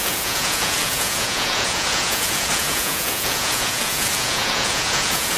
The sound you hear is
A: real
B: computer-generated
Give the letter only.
B